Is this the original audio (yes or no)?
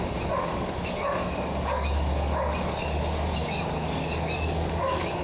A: no